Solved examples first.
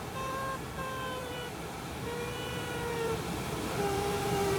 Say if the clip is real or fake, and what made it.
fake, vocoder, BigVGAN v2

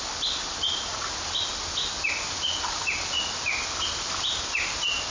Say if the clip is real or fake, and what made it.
real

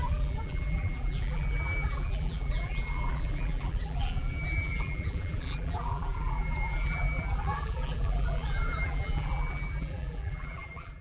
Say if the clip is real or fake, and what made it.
fake, vocoder, BigVGAN v2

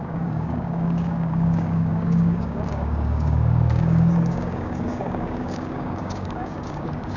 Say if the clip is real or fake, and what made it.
fake, codec, DAC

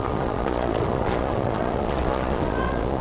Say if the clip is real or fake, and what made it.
fake, vocoder, Vocos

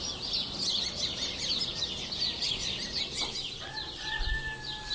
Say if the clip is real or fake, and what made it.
real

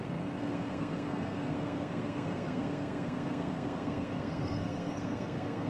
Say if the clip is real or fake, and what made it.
fake, codec, SNAC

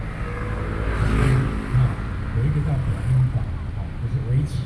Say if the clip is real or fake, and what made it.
real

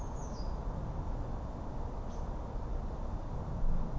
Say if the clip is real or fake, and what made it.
real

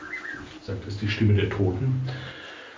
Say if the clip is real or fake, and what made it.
real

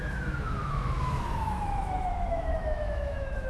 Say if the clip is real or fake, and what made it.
fake, autoencoder, DAC-VAE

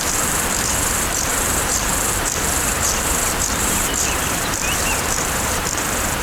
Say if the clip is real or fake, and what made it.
fake, vocoder, BigVGAN v2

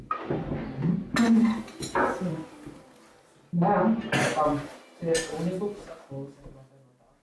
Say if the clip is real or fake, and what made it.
real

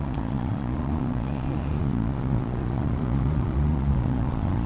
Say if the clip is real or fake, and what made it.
fake, vocoder, Vocos